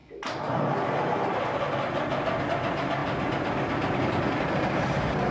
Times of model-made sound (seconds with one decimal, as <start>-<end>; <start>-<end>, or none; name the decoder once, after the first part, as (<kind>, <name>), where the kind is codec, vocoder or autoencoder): none